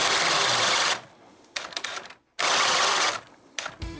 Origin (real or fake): real